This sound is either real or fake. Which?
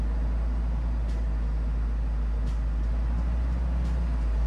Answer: real